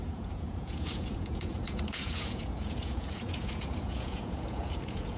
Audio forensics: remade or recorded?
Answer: remade